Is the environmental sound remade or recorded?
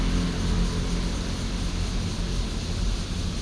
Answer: recorded